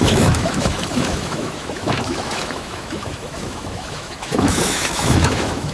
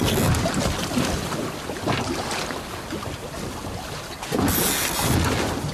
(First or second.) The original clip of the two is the second